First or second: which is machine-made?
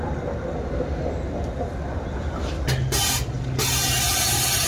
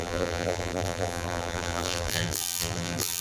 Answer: second